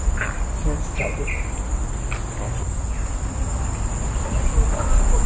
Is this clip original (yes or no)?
yes